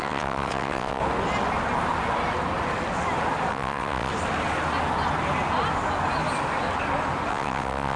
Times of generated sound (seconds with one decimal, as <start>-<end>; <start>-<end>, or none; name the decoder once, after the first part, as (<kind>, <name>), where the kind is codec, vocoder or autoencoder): 0.0-1.0 (vocoder, WaveNeXt); 3.5-4.1; 7.3-8.0